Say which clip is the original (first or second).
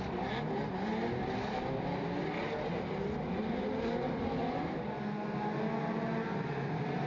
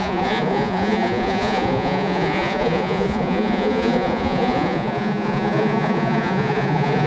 first